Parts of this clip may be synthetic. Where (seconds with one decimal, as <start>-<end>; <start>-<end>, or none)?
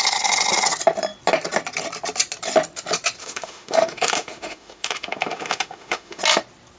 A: 3.2-6.2